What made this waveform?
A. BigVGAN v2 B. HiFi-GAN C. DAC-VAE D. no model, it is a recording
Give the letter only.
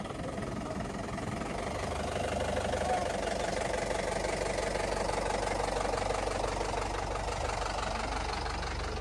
D